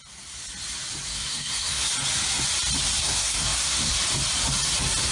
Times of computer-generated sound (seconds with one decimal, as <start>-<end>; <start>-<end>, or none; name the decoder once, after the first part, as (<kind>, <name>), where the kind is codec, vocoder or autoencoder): 1.1-1.9 (codec, SNAC); 3.0-3.9